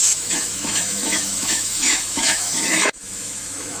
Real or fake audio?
fake